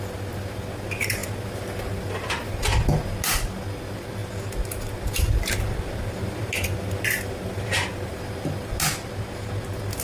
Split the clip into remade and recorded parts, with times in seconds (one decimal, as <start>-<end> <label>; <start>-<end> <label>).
0.0-10.0 recorded